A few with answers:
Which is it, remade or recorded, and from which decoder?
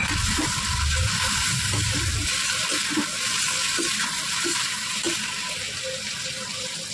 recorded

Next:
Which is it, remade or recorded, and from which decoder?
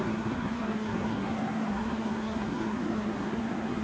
remade, codec, SNAC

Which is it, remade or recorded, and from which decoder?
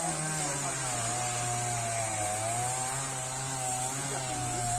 recorded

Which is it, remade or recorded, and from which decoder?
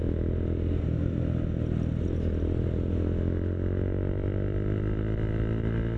recorded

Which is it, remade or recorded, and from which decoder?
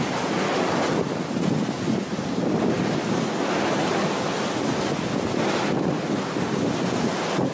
recorded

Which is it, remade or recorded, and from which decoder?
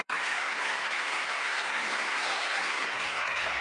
remade, codec, SNAC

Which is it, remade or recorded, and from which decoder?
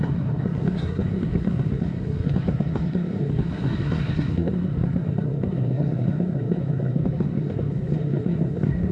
remade, codec, SNAC